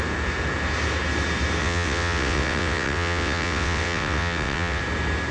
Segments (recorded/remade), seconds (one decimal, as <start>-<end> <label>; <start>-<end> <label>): 0.0-1.6 recorded; 1.6-4.8 remade; 4.8-5.3 recorded